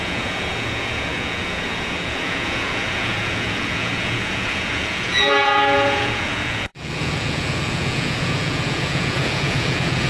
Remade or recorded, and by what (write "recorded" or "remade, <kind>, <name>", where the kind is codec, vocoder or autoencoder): remade, vocoder, Vocos